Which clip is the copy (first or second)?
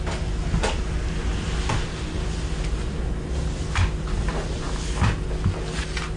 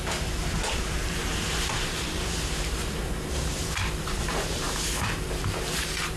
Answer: second